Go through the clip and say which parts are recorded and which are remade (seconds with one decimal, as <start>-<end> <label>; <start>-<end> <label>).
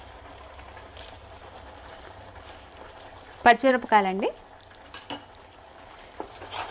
0.0-3.7 remade; 3.7-5.8 recorded; 5.8-6.7 remade